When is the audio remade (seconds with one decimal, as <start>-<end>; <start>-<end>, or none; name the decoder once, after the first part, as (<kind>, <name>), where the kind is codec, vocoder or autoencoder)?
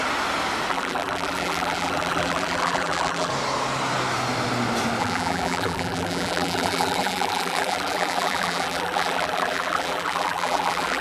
0.7-3.3 (vocoder, BigVGAN v2); 5.0-11.0